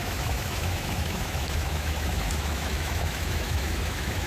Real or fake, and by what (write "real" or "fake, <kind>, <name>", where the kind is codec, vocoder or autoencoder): fake, autoencoder, DAC-VAE